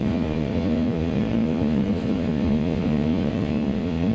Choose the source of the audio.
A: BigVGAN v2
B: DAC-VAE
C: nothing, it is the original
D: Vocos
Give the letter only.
D